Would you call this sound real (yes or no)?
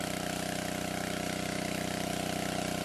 yes